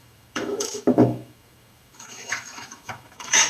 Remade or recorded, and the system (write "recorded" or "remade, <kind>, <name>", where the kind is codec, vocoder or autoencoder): remade, autoencoder, DAC-VAE